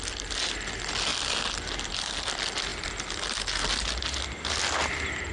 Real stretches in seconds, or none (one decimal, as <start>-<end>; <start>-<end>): 0.0-5.3